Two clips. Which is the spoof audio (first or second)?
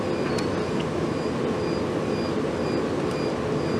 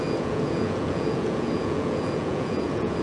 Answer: second